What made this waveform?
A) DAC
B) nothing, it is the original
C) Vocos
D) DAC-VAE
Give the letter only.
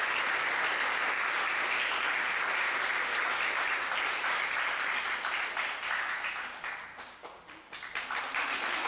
B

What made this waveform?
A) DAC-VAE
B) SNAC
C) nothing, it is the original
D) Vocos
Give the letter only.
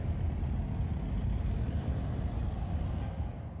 C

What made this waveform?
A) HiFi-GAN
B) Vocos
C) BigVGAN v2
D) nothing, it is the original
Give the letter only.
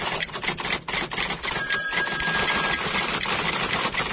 D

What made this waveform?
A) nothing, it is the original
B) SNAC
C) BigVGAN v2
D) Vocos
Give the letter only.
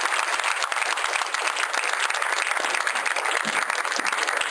A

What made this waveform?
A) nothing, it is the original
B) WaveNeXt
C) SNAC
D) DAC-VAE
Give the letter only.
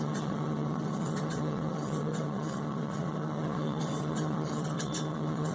B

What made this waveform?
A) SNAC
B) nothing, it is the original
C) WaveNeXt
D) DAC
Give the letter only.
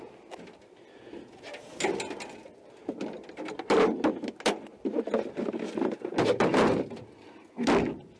B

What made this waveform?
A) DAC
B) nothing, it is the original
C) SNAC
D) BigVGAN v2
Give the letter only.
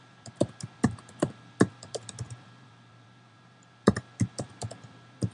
D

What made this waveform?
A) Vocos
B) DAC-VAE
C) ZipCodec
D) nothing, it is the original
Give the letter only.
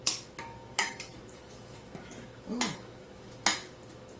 B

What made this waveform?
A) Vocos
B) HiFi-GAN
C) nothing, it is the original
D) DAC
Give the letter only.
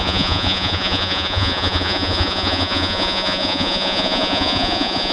A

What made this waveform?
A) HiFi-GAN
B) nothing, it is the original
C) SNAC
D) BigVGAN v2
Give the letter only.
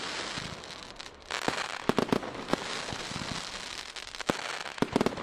B